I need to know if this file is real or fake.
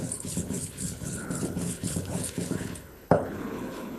fake